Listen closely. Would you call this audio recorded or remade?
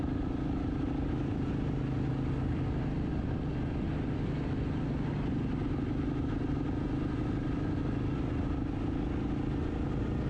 recorded